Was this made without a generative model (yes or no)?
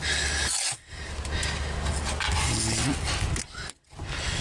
yes